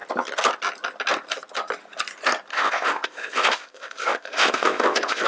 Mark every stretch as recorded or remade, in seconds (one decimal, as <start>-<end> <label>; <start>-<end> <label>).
0.0-2.5 recorded; 2.5-5.3 remade